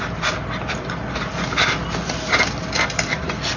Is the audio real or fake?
real